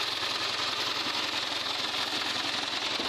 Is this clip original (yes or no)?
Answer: yes